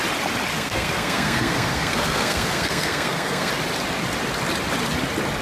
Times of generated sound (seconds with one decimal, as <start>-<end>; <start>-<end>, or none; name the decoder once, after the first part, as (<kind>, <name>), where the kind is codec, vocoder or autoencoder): 0.5-3.5 (codec, SNAC)